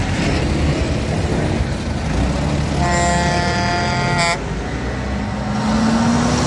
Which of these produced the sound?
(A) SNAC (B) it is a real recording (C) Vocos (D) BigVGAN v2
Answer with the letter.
B